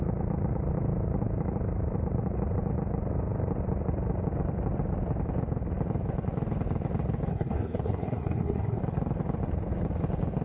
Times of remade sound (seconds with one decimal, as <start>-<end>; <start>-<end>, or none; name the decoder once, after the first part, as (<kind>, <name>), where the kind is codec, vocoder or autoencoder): 7.3-8.8 (codec, SNAC)